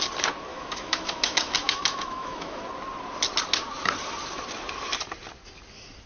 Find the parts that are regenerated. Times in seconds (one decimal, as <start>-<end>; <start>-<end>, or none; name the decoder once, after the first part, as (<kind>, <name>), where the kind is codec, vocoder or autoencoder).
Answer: 0.5-2.6 (autoencoder, DAC-VAE)